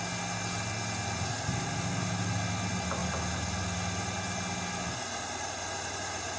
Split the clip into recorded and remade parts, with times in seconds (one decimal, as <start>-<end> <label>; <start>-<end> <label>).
0.0-6.4 recorded